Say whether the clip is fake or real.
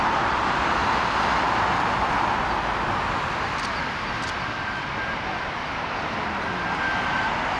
real